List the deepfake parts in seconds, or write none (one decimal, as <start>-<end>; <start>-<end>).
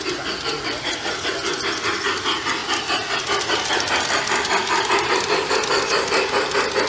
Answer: none